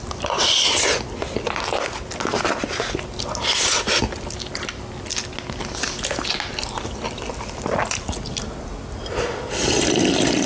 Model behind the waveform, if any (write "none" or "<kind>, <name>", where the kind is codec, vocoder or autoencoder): none